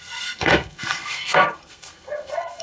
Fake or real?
fake